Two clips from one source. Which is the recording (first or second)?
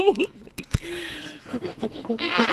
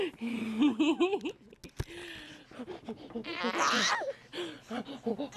second